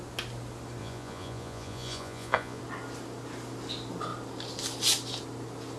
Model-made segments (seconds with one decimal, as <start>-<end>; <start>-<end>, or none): 0.8-2.6